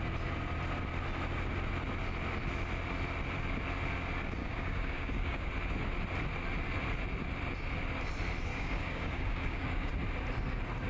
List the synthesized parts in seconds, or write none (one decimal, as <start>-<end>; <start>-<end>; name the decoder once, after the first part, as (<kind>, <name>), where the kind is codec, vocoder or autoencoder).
4.4-5.5 (codec, DAC); 8.5-9.9